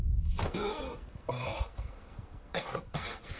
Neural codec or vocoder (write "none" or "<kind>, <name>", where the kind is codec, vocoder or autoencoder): codec, SNAC